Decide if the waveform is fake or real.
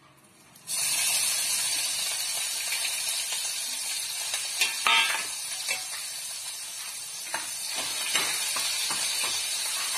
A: real